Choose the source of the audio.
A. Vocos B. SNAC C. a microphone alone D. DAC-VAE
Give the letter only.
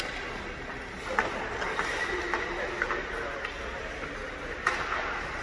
C